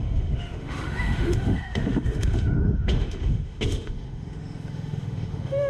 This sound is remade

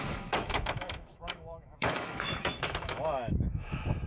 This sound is remade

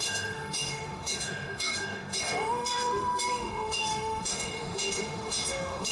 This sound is remade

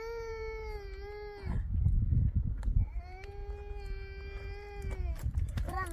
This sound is recorded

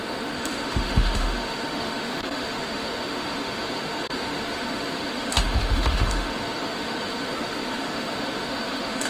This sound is remade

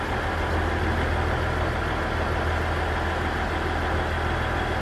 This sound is recorded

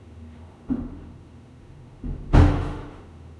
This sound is remade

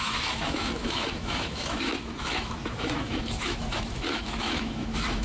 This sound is remade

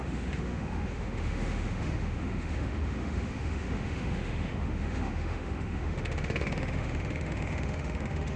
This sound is remade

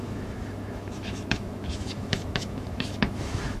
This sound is remade